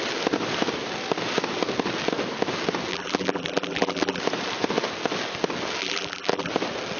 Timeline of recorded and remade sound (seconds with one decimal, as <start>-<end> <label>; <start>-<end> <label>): 0.0-2.9 recorded; 2.9-4.2 remade; 4.2-5.8 recorded; 5.8-6.5 remade; 6.5-7.0 recorded